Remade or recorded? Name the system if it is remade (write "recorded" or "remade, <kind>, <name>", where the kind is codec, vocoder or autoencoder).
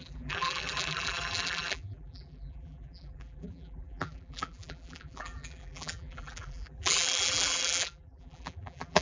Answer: remade, vocoder, BigVGAN v2